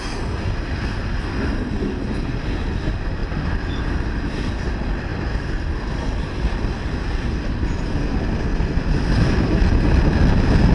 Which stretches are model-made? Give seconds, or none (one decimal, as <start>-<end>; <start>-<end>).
3.2-4.6; 5.1-6.7